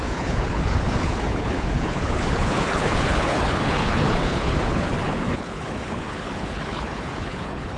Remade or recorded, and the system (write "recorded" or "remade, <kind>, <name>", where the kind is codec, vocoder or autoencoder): remade, codec, HILCodec